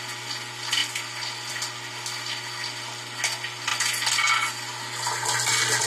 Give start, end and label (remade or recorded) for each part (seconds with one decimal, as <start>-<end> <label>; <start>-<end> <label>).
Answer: 0.0-5.9 recorded